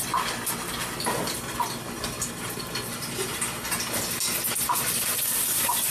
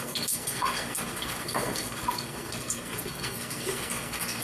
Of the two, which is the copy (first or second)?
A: second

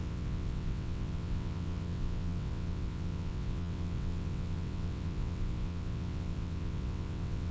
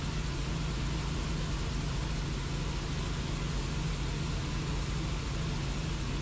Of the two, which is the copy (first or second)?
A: first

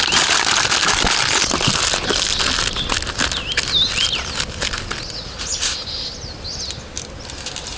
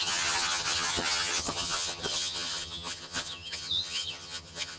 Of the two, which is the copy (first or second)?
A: second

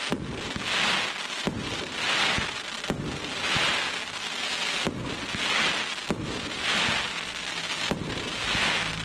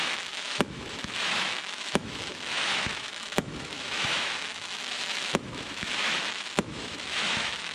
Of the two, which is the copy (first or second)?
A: second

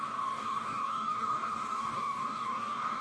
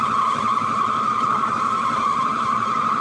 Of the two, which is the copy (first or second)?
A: first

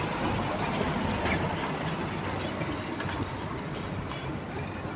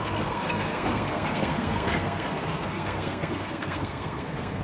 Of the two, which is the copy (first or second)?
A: second